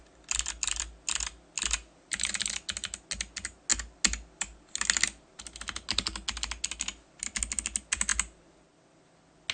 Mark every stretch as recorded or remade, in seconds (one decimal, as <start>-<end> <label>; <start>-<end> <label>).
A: 0.0-9.5 recorded